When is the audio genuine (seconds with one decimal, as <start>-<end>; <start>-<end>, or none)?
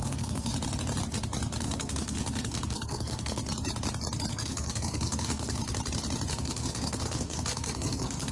0.5-1.6; 3.4-4.3; 5.6-6.3